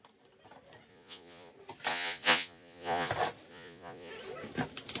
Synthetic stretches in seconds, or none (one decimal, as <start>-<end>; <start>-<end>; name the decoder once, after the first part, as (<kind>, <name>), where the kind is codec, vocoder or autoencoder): 0.9-1.5 (vocoder, Vocos); 1.9-3.1; 3.5-4.1